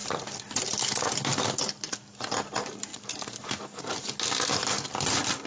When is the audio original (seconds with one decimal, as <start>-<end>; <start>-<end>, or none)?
0.0-2.9; 3.8-5.5